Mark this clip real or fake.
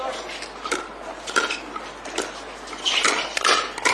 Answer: real